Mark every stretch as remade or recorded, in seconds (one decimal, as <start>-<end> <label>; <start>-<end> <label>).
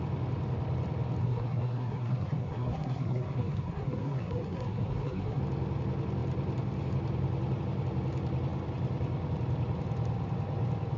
0.0-1.2 recorded; 1.2-5.4 remade; 5.4-11.0 recorded